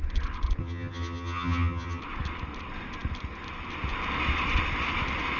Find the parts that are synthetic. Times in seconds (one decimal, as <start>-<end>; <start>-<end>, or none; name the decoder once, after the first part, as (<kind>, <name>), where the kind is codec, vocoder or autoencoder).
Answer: 0.6-2.0 (vocoder, HiFi-GAN)